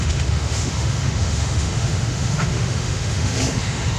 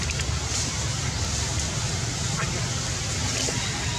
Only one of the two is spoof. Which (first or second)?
first